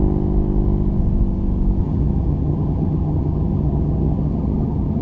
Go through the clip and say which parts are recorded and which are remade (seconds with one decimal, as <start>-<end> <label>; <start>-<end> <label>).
0.0-1.8 recorded; 1.8-5.0 remade